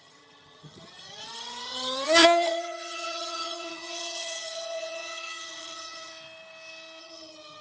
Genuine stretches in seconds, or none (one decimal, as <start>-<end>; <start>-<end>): 6.1-7.0